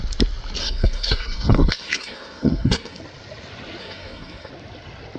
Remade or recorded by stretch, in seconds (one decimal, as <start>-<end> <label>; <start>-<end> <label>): 0.0-0.6 recorded; 0.6-3.0 remade; 3.0-3.8 recorded; 3.8-4.5 remade; 4.5-5.2 recorded